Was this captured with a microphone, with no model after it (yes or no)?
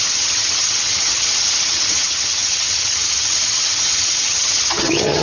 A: no